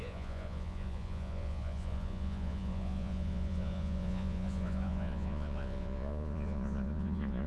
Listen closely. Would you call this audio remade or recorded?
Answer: remade